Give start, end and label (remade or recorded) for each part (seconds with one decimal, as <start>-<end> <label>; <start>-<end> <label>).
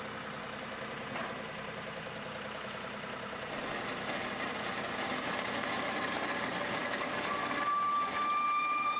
0.0-9.0 recorded